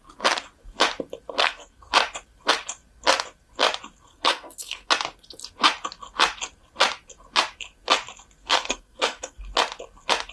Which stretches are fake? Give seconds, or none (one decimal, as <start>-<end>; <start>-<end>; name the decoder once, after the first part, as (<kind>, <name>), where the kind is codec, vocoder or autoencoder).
1.4-1.9 (codec, SNAC); 4.1-4.9; 8.4-9.4